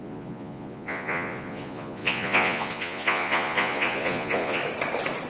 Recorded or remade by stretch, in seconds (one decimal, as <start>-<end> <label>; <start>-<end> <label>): 0.0-4.6 remade; 4.6-5.3 recorded

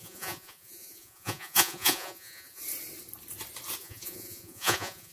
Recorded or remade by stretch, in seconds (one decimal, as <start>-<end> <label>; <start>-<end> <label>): 0.0-2.6 remade; 2.6-3.8 recorded; 3.8-5.1 remade